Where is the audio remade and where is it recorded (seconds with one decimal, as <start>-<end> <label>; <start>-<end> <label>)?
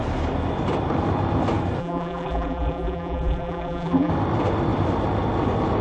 0.0-1.8 recorded; 1.8-4.1 remade; 4.1-5.8 recorded